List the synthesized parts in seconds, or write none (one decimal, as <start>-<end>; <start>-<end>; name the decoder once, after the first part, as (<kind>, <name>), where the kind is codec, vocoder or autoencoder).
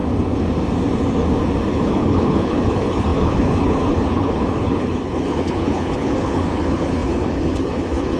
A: 1.7-8.2 (codec, HILCodec)